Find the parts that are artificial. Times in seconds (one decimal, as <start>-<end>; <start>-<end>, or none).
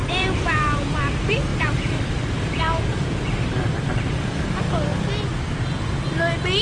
0.0-1.0; 1.5-4.4